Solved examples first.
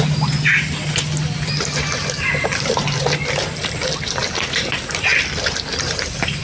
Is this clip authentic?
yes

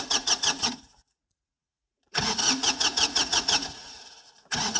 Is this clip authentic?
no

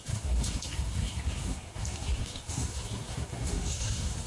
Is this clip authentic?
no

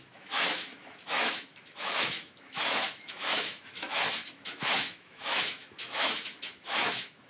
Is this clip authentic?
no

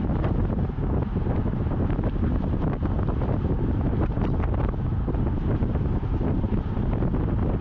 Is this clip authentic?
yes